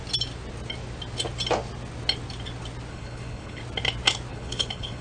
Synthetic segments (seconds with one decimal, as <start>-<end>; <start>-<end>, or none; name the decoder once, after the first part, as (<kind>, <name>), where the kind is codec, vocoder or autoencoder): 2.9-3.6 (codec, HILCodec); 4.3-5.0